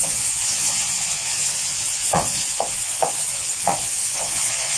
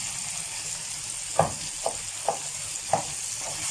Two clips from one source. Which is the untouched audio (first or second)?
second